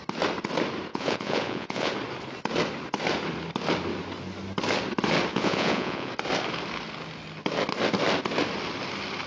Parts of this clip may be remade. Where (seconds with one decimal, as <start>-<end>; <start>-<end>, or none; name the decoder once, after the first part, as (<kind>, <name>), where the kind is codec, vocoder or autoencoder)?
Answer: 0.9-1.9 (vocoder, Vocos); 5.3-6.1

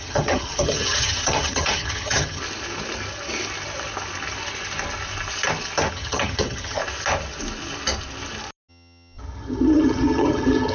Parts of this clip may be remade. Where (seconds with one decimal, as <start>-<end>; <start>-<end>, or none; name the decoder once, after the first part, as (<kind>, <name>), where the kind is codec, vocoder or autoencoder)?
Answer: 0.0-2.4 (vocoder, HiFi-GAN); 5.9-6.8; 8.7-10.7

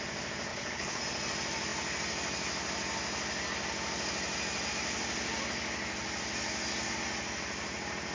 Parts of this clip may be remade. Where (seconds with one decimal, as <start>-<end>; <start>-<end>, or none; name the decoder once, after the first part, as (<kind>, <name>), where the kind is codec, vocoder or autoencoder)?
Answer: 0.5-1.0 (codec, HILCodec)

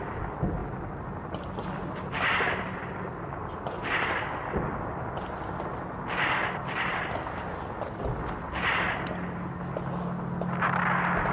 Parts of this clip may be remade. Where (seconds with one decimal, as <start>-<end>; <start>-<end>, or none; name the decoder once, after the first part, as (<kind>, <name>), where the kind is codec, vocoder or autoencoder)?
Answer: 0.6-3.9 (vocoder, BigVGAN v2)

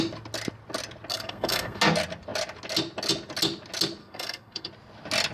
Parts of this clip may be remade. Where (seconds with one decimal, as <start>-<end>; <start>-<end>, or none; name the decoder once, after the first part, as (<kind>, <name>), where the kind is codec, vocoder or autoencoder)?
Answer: 1.1-1.8 (codec, SNAC); 4.0-4.7

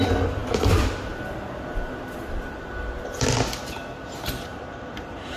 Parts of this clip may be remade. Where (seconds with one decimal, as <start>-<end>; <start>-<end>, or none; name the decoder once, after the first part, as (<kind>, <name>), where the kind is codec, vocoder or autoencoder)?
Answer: 4.5-5.4 (vocoder, BigVGAN v2)

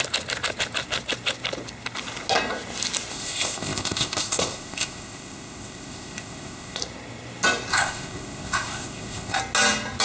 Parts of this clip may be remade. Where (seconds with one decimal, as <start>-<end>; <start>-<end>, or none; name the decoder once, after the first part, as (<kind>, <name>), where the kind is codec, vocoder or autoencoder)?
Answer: 3.1-6.8 (codec, ZipCodec); 7.7-9.4